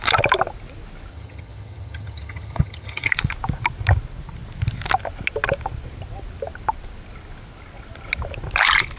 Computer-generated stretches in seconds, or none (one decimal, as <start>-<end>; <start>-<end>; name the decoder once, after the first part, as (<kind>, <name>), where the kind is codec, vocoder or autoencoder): 1.1-3.1 (vocoder, HiFi-GAN)